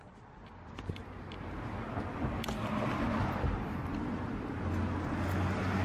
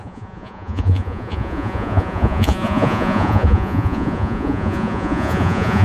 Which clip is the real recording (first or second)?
first